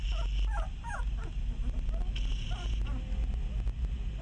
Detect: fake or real real